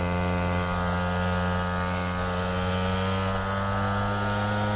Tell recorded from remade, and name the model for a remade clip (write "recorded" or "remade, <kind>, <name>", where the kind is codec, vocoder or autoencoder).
recorded